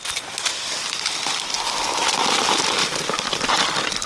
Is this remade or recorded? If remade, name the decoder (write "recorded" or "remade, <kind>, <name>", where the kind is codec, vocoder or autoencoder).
recorded